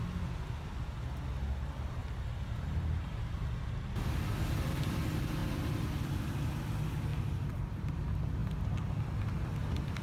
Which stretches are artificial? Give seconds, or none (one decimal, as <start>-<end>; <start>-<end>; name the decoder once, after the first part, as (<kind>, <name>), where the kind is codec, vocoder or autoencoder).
2.0-3.5 (vocoder, BigVGAN v2); 7.1-8.0